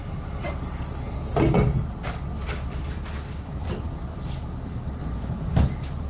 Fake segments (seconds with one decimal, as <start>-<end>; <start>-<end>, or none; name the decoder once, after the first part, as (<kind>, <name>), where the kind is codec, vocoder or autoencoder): 5.0-5.6 (vocoder, Vocos)